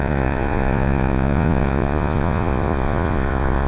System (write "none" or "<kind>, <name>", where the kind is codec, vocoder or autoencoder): vocoder, Vocos